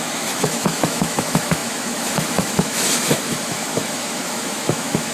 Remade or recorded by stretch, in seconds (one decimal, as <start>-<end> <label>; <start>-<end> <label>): 0.0-5.1 remade